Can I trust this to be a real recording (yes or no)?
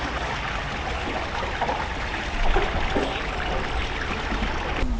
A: yes